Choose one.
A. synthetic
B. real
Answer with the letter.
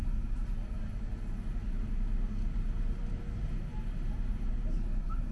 B